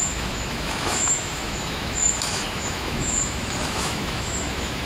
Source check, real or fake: fake